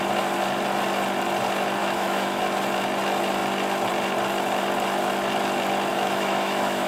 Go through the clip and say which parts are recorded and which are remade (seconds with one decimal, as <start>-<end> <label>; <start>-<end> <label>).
0.0-1.8 recorded; 1.8-2.4 remade; 2.4-5.9 recorded; 5.9-6.9 remade